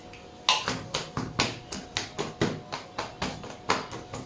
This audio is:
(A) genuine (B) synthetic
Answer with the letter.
A